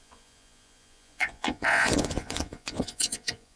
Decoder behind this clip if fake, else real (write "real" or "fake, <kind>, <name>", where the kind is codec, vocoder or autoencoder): fake, vocoder, Vocos